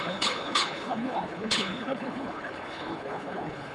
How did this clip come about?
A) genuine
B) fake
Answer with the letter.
B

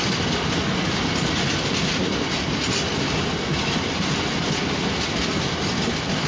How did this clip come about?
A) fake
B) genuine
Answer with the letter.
B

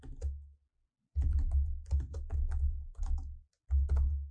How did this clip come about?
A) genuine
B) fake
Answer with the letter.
A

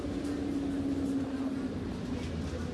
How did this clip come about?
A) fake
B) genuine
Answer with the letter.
B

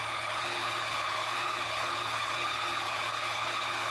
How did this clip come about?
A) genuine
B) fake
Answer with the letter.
B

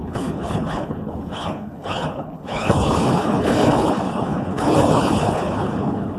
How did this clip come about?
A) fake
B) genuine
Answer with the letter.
A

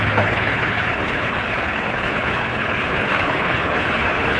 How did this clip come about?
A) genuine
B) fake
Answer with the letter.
B